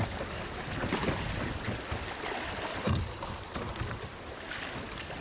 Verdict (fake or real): real